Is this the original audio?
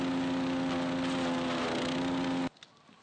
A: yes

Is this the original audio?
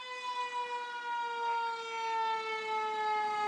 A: yes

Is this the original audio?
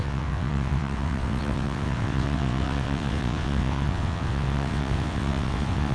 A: no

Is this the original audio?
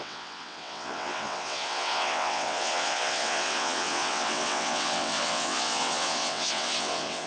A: no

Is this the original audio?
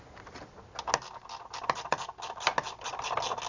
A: yes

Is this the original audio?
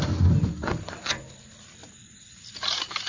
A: yes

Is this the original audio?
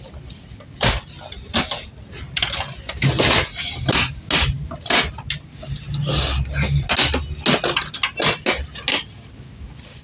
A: yes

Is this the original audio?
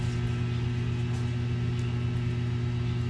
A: yes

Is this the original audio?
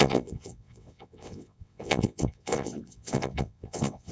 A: no